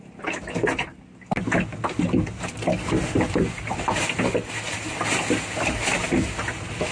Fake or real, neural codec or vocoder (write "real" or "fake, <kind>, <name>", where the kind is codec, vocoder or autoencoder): real